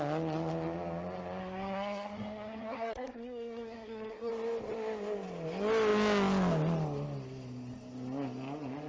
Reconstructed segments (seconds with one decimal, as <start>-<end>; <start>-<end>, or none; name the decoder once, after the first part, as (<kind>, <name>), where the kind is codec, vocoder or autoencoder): 1.4-4.3 (codec, SNAC)